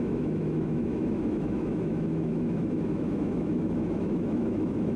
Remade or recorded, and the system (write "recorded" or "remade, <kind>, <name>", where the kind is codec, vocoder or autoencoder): remade, autoencoder, DAC-VAE